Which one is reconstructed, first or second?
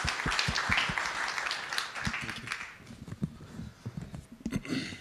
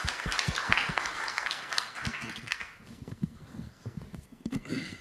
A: second